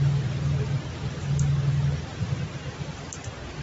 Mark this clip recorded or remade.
remade